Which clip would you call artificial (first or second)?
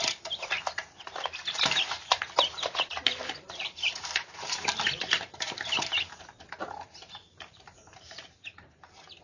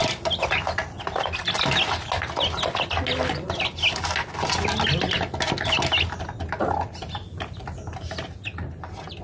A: first